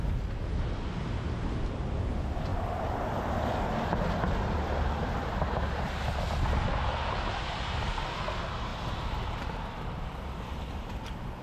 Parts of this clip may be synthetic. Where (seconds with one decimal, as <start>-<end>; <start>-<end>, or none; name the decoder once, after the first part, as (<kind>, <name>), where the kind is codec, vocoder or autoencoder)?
none